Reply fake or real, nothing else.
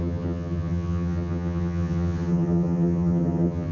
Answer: fake